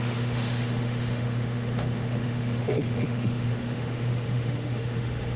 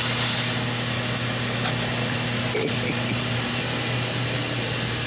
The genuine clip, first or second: second